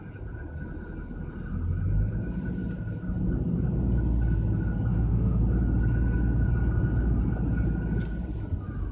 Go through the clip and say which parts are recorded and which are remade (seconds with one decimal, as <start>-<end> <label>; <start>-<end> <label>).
0.0-4.9 recorded; 4.9-5.4 remade; 5.4-8.9 recorded